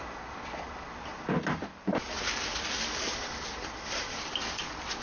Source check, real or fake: real